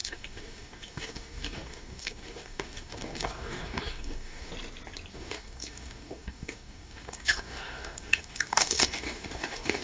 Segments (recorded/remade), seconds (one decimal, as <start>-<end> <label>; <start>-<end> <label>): 0.0-4.5 remade; 4.5-5.1 recorded; 5.1-9.8 remade